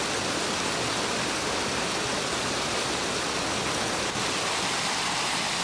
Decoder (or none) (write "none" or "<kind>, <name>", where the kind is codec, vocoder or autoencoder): none